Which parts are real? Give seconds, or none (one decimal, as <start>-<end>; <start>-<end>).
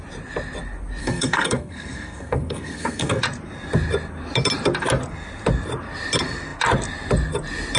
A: 0.0-1.0; 3.2-7.8